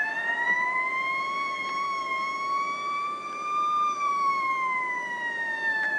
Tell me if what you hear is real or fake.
fake